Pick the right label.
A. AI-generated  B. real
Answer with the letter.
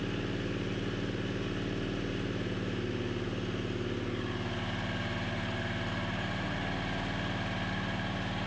B